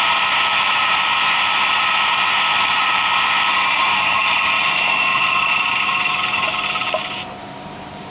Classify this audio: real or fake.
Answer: fake